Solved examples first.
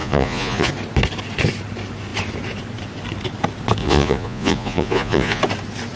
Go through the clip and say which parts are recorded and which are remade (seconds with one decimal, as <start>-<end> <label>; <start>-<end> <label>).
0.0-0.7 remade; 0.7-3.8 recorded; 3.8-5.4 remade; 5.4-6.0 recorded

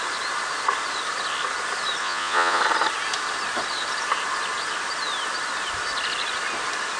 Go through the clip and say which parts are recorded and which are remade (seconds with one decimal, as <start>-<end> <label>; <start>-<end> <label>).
0.0-2.0 recorded; 2.0-2.6 remade; 2.6-7.0 recorded

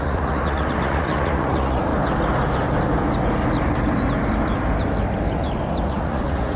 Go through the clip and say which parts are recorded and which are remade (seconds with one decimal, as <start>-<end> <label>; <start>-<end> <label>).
0.0-1.9 remade; 1.9-5.9 recorded; 5.9-6.6 remade

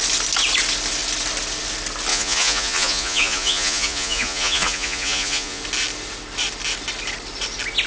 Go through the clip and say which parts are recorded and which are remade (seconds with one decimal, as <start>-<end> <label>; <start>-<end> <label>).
0.0-2.1 recorded; 2.1-5.6 remade; 5.6-7.9 recorded

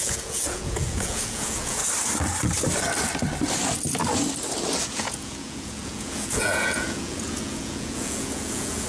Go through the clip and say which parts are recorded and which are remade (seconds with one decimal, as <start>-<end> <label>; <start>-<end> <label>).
0.0-1.8 remade; 1.8-4.8 recorded; 4.8-8.9 remade

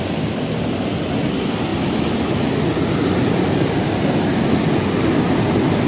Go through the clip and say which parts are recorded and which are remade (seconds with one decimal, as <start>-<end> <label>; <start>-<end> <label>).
0.0-5.9 recorded

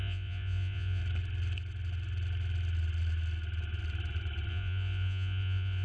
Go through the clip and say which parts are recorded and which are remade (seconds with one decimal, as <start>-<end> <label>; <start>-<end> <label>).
0.0-1.0 remade; 1.0-4.5 recorded; 4.5-5.8 remade

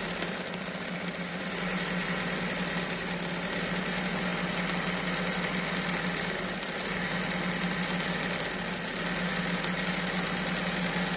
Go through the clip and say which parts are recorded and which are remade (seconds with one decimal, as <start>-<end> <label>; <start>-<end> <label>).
0.0-11.2 recorded